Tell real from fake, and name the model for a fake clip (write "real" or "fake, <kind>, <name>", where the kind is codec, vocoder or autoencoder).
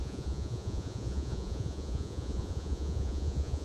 fake, vocoder, Vocos